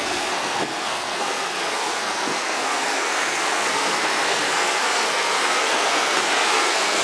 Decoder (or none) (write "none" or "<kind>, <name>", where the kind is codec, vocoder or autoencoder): codec, SNAC